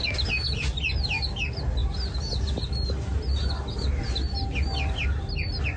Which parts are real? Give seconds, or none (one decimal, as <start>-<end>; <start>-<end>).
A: 0.0-5.8